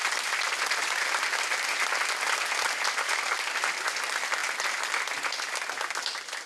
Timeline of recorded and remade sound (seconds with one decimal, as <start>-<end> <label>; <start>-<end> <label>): 0.0-6.5 recorded